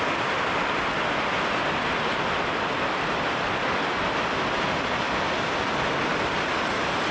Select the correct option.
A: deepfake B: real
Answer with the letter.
B